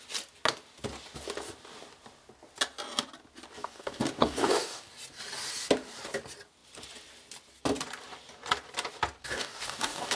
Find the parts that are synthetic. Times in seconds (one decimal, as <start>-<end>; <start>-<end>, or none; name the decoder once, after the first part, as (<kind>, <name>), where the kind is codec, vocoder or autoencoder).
3.6-4.9 (codec, DAC); 9.2-10.2